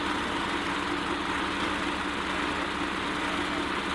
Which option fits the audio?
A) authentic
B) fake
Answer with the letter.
A